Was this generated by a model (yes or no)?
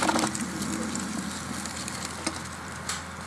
no